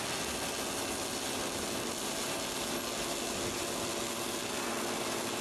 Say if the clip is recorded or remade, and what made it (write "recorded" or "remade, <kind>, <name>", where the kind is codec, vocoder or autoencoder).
recorded